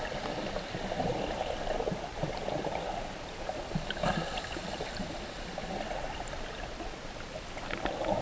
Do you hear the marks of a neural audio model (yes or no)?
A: no